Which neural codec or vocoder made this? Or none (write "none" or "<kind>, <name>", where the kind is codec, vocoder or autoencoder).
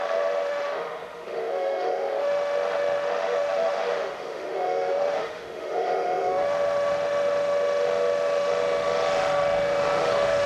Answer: autoencoder, DAC-VAE